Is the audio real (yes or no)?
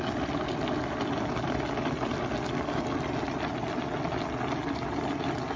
yes